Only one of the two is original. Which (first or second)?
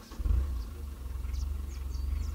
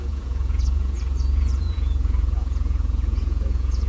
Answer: first